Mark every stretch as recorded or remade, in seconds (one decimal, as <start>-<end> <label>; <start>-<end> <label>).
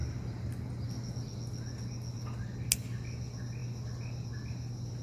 0.0-5.0 recorded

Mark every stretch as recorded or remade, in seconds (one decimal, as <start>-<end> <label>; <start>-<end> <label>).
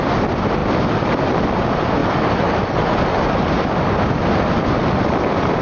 0.0-5.6 recorded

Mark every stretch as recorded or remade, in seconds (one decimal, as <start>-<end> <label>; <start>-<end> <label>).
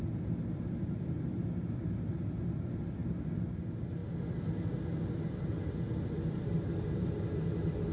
0.0-7.9 recorded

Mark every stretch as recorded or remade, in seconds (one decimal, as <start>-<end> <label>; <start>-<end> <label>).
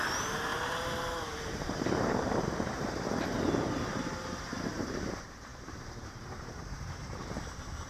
0.0-7.9 remade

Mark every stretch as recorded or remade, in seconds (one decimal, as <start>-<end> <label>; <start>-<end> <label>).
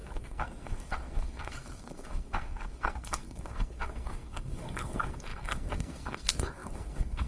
0.0-7.3 remade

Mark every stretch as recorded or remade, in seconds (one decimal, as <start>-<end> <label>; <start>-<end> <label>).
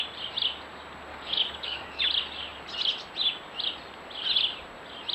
0.0-1.1 recorded; 1.1-2.0 remade; 2.0-5.1 recorded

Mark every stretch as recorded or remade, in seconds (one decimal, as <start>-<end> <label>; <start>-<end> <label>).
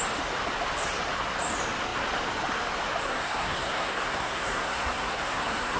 0.0-3.0 recorded; 3.0-5.8 remade